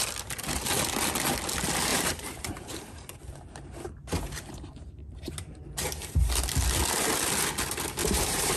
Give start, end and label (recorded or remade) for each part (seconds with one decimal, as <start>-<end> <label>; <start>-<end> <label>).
0.0-1.9 recorded; 1.9-5.8 remade; 5.8-8.0 recorded; 8.0-8.6 remade